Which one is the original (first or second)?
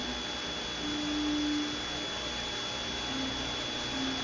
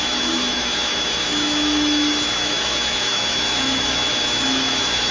first